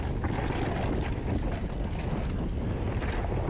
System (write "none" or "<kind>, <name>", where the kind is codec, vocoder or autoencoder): none